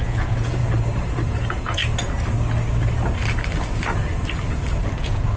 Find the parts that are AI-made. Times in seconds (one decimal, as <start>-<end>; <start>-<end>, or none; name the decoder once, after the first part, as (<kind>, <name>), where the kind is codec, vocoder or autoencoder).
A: 0.0-0.6 (vocoder, Vocos); 1.4-1.8; 5.0-5.4